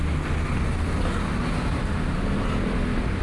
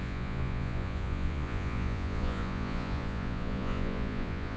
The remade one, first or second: second